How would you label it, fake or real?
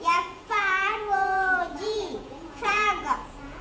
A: fake